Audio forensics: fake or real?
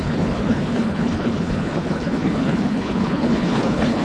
fake